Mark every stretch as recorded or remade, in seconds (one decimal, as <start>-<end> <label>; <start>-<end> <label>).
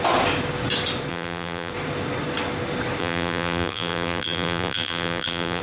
0.0-1.1 recorded; 1.1-1.7 remade; 1.7-3.0 recorded; 3.0-5.6 remade